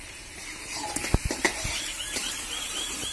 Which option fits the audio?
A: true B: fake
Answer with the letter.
B